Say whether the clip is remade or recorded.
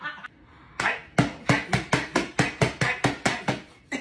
recorded